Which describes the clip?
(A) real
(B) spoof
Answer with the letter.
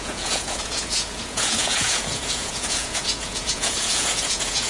B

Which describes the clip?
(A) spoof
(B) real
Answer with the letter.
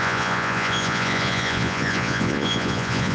A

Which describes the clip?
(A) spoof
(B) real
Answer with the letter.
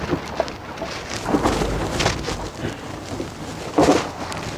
B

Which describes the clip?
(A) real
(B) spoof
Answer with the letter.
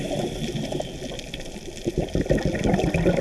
A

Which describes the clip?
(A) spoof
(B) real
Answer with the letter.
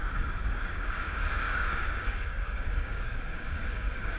A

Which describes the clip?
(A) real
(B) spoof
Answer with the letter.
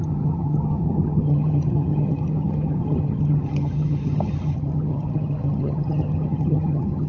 B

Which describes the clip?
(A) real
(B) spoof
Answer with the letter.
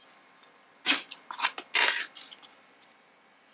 A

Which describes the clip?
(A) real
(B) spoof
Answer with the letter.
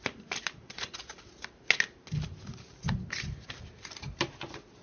A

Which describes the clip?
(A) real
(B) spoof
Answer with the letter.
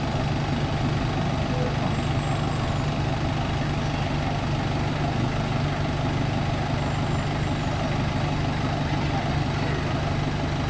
A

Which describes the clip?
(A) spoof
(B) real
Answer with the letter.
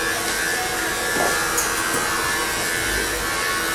B